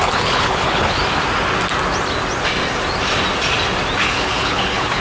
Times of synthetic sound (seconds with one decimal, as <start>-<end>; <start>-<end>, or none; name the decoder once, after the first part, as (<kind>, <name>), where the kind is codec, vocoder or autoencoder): 0.0-1.0 (codec, HILCodec); 4.0-5.0

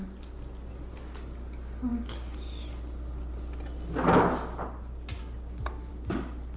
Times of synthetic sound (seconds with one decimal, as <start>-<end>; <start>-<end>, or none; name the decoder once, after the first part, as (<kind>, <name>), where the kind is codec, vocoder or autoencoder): none

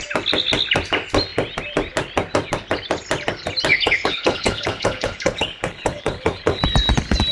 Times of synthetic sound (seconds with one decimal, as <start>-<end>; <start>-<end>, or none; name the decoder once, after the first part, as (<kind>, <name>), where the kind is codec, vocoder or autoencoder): 3.7-6.6 (codec, HILCodec)

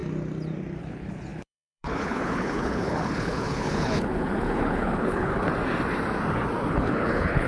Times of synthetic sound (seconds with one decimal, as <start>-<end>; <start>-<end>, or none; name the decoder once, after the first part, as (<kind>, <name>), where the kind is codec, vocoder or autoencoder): 0.8-5.3 (codec, HILCodec); 6.7-7.5

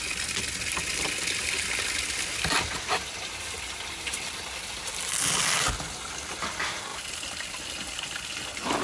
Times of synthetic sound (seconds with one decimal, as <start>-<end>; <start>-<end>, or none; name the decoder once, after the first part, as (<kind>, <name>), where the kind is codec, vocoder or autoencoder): none